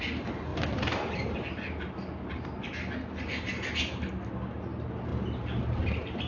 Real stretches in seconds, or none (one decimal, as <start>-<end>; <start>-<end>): 0.0-0.5; 2.4-6.3